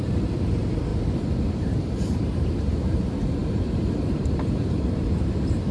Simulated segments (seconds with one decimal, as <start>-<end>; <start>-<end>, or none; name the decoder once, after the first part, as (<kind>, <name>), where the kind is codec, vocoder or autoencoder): 0.0-0.9 (vocoder, BigVGAN v2); 1.5-5.7